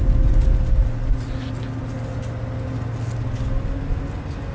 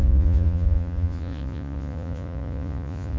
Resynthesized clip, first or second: second